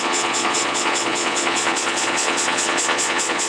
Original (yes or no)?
no